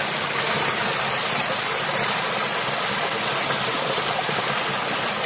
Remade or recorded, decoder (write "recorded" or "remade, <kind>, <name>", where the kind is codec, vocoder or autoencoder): recorded